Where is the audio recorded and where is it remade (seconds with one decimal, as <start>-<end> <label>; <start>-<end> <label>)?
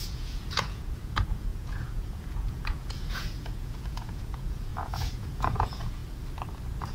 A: 0.0-6.0 remade; 6.0-6.9 recorded